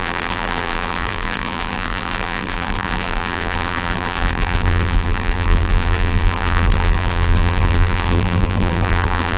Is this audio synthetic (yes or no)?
yes